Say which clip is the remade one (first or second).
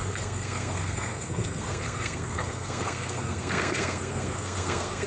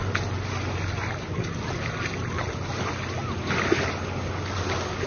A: first